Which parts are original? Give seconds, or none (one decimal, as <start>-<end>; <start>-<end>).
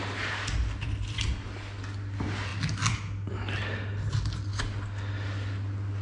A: 0.0-6.0